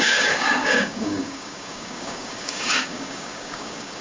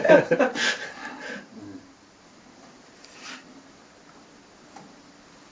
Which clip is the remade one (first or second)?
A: first